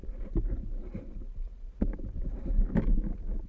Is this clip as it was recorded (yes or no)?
no